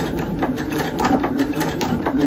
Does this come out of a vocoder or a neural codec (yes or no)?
yes